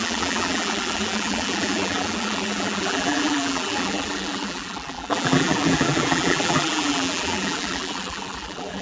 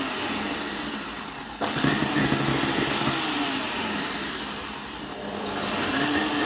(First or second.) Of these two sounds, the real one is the second